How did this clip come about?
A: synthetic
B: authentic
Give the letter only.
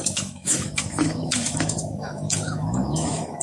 A